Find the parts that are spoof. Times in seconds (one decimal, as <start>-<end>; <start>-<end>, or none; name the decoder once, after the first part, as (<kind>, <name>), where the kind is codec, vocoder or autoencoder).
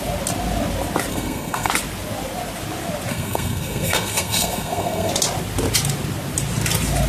1.1-1.7 (codec, SNAC); 3.1-5.1